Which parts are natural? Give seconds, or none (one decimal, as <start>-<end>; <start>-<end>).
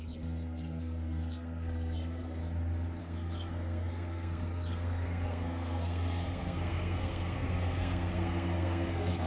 2.4-3.0